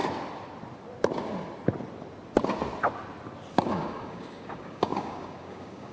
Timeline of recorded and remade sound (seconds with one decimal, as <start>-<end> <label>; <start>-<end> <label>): 0.0-3.5 recorded; 3.5-5.9 remade